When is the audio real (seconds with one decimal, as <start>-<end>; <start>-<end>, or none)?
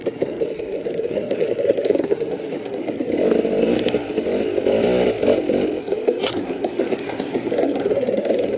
3.1-5.8